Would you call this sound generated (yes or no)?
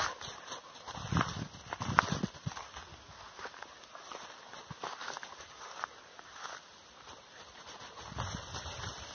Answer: no